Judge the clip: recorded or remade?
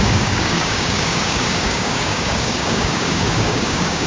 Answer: remade